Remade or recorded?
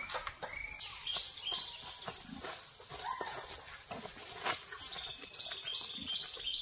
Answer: recorded